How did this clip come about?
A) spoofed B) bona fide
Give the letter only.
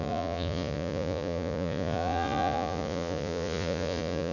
A